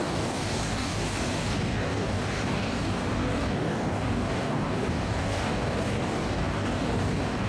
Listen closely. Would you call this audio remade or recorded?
remade